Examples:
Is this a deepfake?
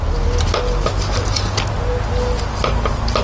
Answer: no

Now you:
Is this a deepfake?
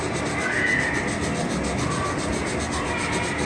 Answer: no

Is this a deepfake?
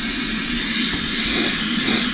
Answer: no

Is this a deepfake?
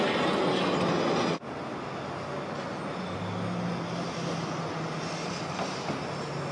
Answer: no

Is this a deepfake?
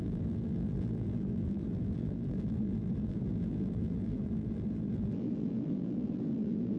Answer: yes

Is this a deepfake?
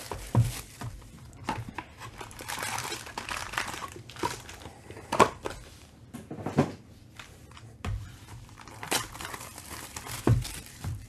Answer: yes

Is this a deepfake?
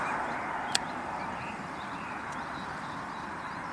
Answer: yes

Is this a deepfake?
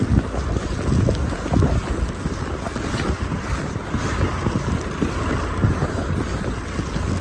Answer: no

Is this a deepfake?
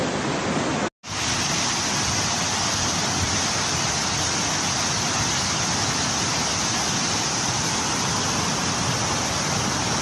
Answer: no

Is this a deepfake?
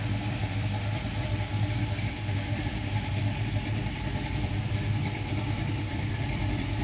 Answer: yes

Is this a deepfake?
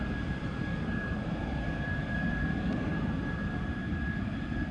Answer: yes